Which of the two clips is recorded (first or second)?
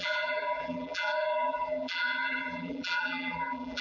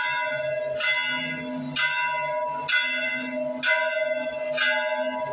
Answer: second